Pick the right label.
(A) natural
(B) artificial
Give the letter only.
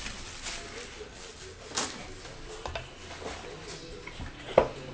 A